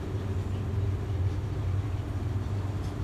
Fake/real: real